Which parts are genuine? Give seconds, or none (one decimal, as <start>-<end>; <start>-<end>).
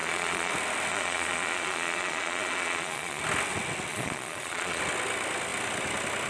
0.5-0.9; 3.2-3.9; 4.8-6.3